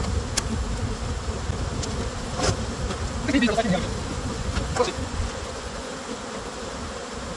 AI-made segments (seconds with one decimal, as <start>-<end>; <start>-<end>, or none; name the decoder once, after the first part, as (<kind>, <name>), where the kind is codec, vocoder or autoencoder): 4.1-5.9 (vocoder, Vocos)